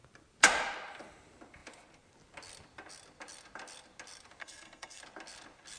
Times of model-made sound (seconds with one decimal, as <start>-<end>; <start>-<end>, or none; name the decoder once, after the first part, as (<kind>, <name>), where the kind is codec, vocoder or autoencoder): 4.4-5.0 (codec, SNAC)